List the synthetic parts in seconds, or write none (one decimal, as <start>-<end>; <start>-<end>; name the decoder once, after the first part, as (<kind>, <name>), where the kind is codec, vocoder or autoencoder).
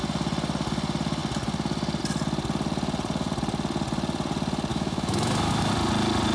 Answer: 4.7-5.7 (autoencoder, DAC-VAE)